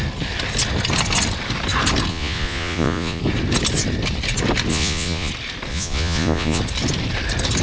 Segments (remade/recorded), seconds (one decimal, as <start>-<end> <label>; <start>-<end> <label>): 0.0-2.1 recorded; 2.1-3.2 remade; 3.2-4.7 recorded; 4.7-5.3 remade; 5.3-5.7 recorded; 5.7-6.6 remade; 6.6-7.6 recorded

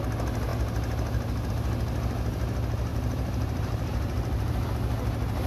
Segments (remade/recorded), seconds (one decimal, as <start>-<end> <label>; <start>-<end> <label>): 0.0-2.9 recorded; 2.9-4.7 remade; 4.7-5.5 recorded

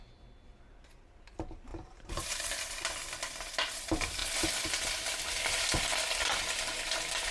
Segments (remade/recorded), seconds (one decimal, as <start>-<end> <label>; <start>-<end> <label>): 0.0-1.7 recorded; 1.7-2.4 remade; 2.4-7.3 recorded

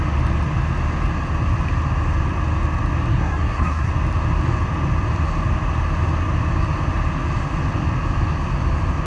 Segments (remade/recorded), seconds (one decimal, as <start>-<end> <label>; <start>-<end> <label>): 0.0-3.1 recorded; 3.1-3.9 remade; 3.9-9.1 recorded

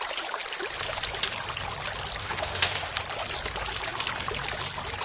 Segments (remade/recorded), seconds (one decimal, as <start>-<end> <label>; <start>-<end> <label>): 0.0-2.2 recorded; 2.2-2.9 remade; 2.9-5.0 recorded

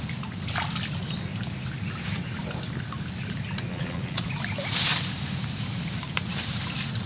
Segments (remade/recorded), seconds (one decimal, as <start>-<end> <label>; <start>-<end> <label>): 0.0-3.7 recorded; 3.7-4.3 remade; 4.3-7.1 recorded

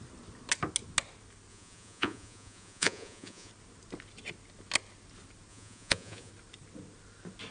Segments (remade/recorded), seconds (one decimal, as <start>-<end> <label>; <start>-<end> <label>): 0.0-1.5 recorded; 1.5-3.5 remade; 3.5-5.5 recorded; 5.5-6.3 remade; 6.3-7.5 recorded